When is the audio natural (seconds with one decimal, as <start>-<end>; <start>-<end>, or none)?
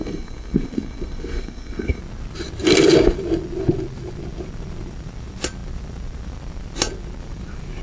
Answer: 2.0-7.8